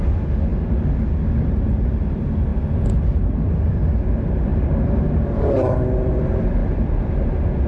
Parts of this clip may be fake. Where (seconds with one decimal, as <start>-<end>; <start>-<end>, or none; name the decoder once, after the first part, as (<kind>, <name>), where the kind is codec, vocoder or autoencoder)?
0.5-1.8 (vocoder, BigVGAN v2); 4.5-5.2; 6.6-7.3